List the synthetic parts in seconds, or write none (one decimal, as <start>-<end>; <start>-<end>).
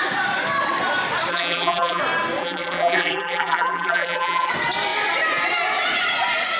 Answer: 1.3-2.0; 2.4-4.5